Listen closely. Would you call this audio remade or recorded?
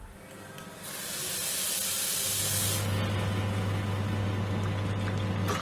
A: recorded